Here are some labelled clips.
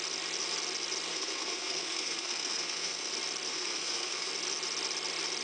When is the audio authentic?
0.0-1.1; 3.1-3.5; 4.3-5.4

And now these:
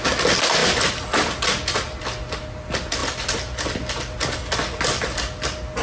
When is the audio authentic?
0.0-5.8